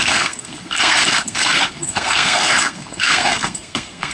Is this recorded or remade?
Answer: remade